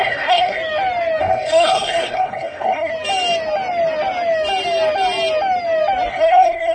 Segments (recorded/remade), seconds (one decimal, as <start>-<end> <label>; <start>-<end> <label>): 0.0-0.6 remade; 0.6-1.2 recorded; 1.2-2.9 remade; 2.9-6.1 recorded; 6.1-6.7 remade